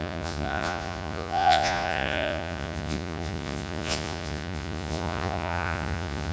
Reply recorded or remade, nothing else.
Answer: remade